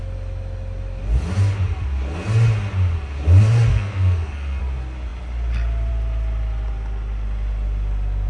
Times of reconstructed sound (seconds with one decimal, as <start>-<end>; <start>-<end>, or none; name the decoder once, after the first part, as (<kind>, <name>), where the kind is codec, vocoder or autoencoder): 3.7-4.6 (codec, SNAC)